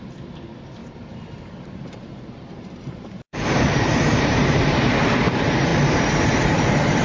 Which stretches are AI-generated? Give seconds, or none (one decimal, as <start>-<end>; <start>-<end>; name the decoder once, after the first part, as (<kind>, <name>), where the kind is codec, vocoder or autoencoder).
0.8-5.0 (vocoder, BigVGAN v2); 5.7-7.0